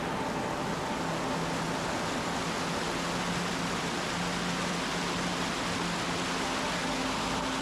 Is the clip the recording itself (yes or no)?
yes